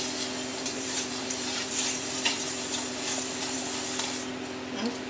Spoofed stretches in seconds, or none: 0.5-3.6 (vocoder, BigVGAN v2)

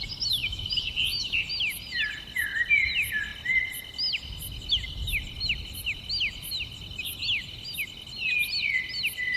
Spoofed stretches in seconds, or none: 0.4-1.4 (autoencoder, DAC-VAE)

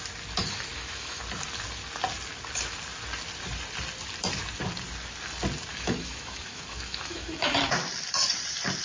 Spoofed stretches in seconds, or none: 0.7-1.2 (autoencoder, DAC-VAE); 5.7-7.6

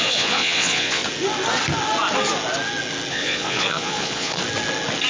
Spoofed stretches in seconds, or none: 0.0-1.0 (vocoder, Vocos); 3.1-4.4

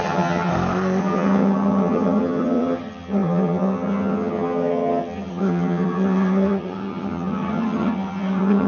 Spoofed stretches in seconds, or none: 0.0-0.5 (vocoder, HiFi-GAN); 1.0-8.7

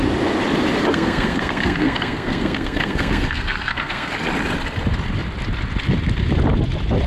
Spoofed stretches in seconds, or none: 0.9-4.1 (codec, SNAC)

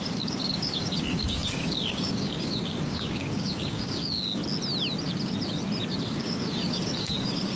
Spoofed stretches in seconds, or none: 0.0-4.4 (codec, DAC); 6.1-7.6